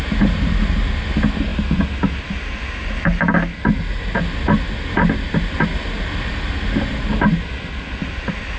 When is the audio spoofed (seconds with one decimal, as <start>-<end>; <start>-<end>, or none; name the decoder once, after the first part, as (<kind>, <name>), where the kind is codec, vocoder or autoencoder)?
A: none